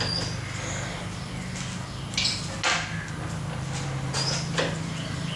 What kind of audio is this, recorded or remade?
recorded